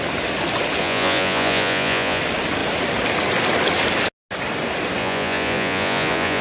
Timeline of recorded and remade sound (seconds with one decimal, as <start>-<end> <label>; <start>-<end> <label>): 0.0-0.8 recorded; 0.8-2.2 remade; 2.2-5.0 recorded; 5.0-6.4 remade